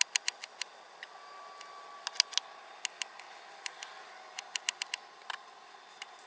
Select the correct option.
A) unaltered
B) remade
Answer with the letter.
A